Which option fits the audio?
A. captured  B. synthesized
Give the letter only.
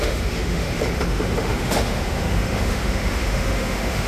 B